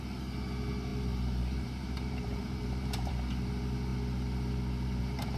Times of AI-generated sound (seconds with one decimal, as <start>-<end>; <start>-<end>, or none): 0.9-3.1